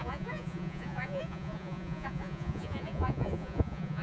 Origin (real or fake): fake